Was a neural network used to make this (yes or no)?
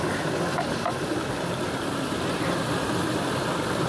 no